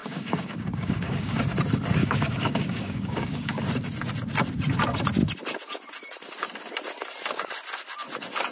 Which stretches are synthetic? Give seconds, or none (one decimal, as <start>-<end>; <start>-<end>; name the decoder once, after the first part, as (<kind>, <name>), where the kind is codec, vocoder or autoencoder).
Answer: 0.0-1.4 (codec, DAC); 2.0-3.6